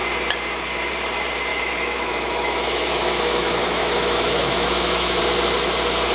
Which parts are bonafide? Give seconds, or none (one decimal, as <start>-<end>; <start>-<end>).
0.0-1.5; 5.2-6.1